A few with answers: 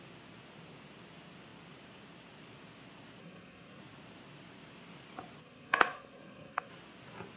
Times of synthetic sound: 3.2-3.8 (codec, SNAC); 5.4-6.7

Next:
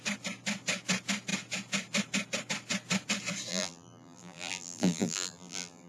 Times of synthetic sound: 3.5-5.9 (vocoder, BigVGAN v2)

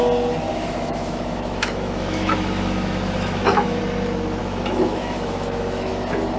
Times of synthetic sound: 0.5-3.8 (autoencoder, DAC-VAE); 4.4-5.9

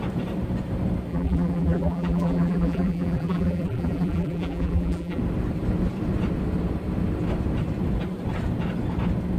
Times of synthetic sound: 1.1-5.2 (vocoder, BigVGAN v2)

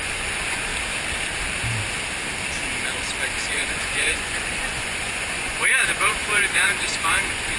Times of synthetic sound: 0.0-0.7 (vocoder, Vocos); 3.5-7.6

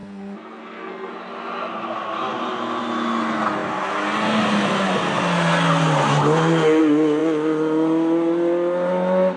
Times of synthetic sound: 0.0-1.1 (codec, SNAC)